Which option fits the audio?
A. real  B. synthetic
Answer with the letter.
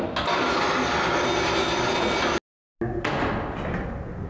A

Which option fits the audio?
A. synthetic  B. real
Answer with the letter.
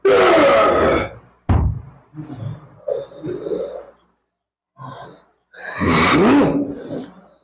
B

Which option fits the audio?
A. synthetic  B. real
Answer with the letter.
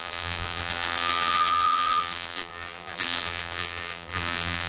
A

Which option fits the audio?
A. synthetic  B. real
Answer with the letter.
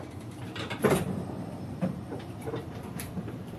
A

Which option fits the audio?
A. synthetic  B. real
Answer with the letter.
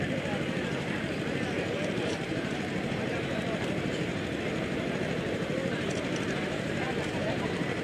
A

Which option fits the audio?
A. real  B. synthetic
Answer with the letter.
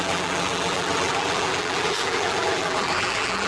B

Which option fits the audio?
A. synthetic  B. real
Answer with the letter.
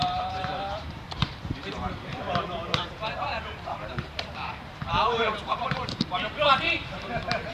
A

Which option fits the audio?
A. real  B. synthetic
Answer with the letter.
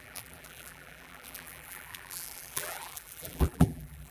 B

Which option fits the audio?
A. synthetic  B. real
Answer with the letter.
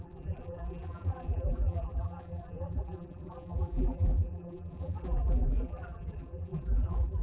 A